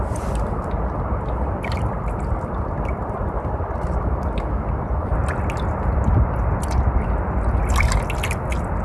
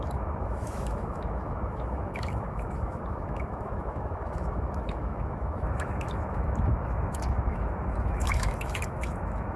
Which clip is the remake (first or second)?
second